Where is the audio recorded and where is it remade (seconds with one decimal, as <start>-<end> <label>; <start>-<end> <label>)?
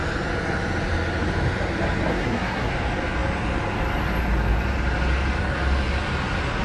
0.0-2.1 recorded; 2.1-2.7 remade; 2.7-6.6 recorded